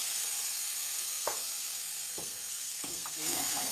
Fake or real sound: fake